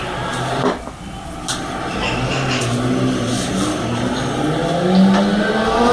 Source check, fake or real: real